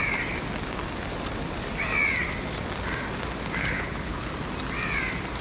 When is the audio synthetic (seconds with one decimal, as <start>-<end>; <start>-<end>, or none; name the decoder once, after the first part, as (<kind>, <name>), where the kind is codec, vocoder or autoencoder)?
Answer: 3.6-4.3 (codec, HILCodec)